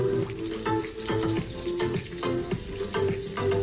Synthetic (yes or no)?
no